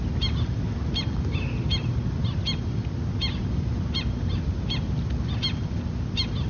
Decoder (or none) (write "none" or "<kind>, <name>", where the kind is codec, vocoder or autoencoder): none